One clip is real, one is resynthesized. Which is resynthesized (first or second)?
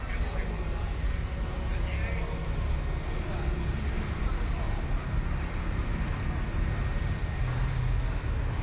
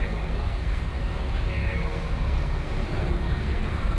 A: second